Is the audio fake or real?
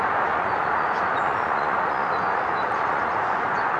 fake